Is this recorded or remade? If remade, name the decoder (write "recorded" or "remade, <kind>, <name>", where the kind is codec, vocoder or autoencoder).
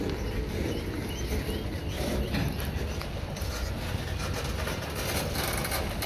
recorded